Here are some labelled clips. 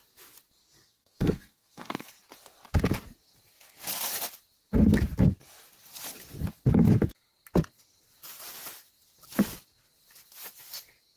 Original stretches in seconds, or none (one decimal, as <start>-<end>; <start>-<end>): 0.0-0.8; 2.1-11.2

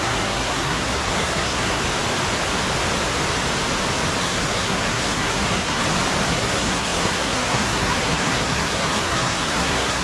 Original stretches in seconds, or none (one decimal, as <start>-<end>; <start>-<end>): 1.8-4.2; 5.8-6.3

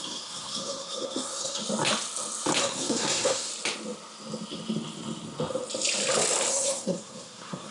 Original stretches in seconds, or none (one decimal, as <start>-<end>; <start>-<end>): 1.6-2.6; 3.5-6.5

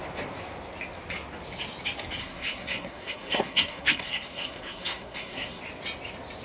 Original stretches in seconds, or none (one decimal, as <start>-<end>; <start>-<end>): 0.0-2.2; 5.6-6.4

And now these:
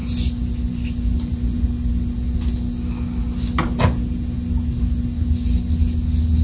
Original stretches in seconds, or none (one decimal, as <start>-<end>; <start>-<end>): 0.0-6.4

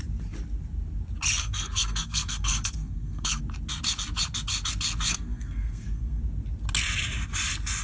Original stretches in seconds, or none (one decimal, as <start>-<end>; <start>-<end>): 0.0-1.4; 3.4-5.1; 6.2-7.8

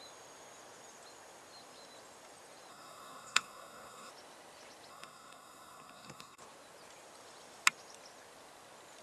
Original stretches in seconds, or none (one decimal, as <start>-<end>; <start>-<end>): 0.0-2.7; 4.1-4.9; 6.4-9.0